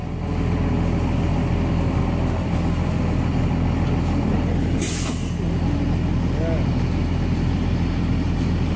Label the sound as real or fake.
real